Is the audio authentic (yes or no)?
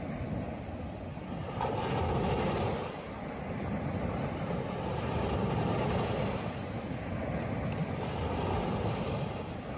yes